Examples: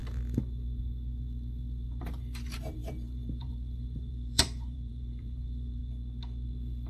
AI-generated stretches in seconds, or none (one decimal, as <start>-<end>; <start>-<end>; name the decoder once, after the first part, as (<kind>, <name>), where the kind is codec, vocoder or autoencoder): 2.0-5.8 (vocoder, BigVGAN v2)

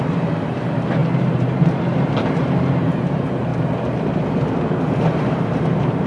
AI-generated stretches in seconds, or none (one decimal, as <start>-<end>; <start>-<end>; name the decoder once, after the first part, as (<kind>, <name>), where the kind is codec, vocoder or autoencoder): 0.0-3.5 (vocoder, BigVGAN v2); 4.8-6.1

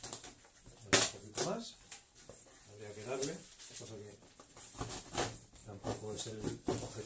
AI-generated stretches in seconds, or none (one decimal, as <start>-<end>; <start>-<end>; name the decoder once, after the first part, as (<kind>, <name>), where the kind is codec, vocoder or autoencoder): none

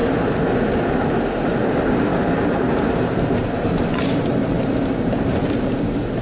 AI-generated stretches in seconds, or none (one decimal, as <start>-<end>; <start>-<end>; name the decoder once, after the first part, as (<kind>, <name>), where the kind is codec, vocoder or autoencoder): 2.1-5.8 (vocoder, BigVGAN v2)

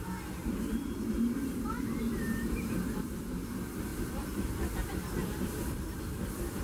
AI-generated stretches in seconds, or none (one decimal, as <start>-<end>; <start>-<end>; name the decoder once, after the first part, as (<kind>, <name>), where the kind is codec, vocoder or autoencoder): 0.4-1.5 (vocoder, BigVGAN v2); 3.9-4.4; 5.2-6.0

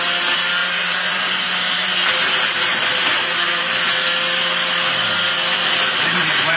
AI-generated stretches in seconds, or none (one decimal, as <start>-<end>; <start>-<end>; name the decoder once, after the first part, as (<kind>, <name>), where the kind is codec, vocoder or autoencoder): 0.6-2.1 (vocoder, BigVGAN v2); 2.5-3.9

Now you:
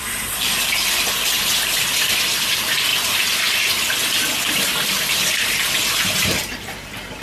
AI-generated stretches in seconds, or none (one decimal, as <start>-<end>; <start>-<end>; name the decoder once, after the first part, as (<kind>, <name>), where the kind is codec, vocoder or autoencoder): 0.0-2.9 (vocoder, BigVGAN v2); 4.5-7.2